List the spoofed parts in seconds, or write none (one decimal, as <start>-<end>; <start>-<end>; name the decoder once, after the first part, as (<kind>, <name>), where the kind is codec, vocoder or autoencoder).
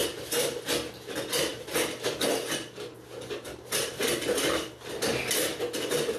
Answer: 0.0-0.6 (vocoder, BigVGAN v2)